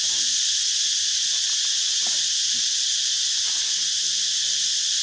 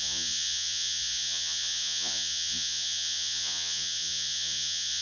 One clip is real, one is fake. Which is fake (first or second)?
second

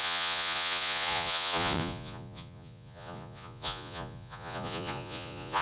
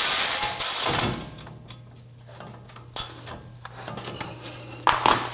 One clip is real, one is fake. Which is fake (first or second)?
first